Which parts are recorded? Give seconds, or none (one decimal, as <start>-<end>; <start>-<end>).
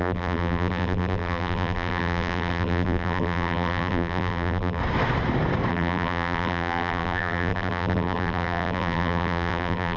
4.8-5.7